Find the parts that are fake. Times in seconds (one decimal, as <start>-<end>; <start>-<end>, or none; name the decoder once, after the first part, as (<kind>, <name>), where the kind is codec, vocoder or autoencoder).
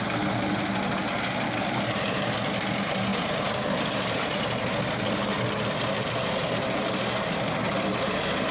none